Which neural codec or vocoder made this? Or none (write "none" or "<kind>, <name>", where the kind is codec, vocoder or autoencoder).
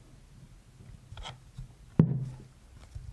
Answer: none